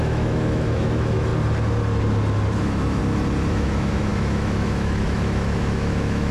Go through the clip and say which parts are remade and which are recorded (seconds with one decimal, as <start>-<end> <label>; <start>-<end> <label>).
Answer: 0.0-1.3 remade; 1.3-2.6 recorded; 2.6-3.0 remade; 3.0-3.5 recorded; 3.5-6.3 remade